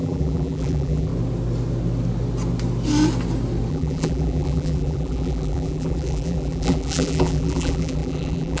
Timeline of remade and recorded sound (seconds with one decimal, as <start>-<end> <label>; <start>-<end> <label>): 0.0-1.1 remade; 1.1-3.7 recorded; 3.7-8.6 remade